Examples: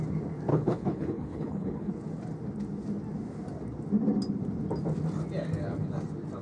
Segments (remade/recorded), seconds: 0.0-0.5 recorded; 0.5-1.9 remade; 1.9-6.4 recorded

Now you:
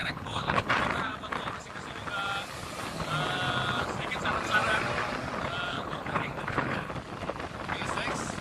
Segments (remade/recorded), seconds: 0.0-0.7 remade; 0.7-5.7 recorded; 5.7-6.9 remade; 6.9-8.4 recorded